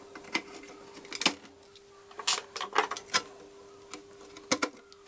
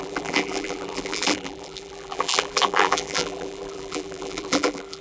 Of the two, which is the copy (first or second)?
second